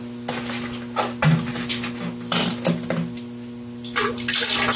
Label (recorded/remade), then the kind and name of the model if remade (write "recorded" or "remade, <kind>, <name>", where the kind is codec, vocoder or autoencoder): recorded